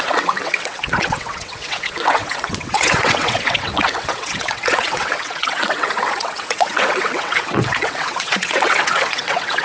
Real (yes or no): no